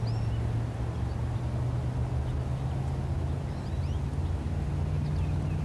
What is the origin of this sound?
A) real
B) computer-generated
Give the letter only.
A